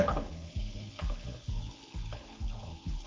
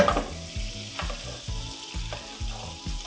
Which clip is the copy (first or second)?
first